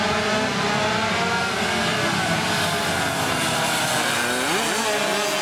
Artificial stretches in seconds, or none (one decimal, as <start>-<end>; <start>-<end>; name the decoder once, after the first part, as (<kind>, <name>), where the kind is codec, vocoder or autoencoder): none